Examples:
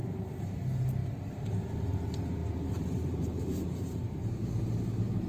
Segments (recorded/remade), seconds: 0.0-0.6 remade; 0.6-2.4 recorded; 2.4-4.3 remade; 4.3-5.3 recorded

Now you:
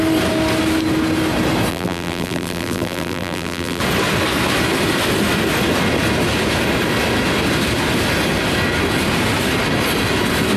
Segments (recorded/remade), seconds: 0.0-1.7 recorded; 1.7-3.8 remade; 3.8-10.6 recorded

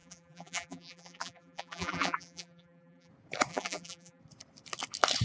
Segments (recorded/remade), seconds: 0.0-3.1 remade; 3.1-3.5 recorded; 3.5-4.2 remade; 4.2-5.2 recorded